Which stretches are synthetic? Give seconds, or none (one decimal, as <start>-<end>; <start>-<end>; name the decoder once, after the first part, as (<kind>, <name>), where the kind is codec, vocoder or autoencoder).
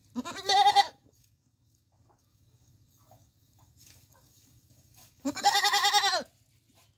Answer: 0.7-5.8 (codec, DAC)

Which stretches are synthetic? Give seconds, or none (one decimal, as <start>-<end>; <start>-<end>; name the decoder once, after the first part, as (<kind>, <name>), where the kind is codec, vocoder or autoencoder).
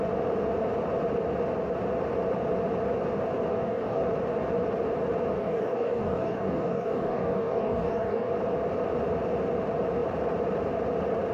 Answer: 3.5-4.0 (codec, DAC); 5.4-8.3